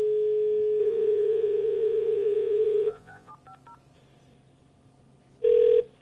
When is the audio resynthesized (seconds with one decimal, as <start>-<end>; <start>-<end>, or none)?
0.8-3.3